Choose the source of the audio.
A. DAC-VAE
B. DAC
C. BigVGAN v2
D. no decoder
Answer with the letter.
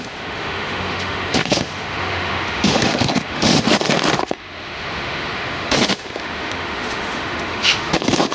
A